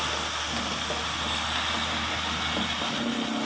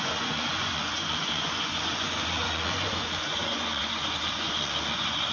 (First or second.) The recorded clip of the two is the first